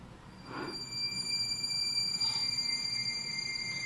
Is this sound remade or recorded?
remade